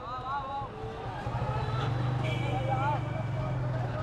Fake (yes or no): no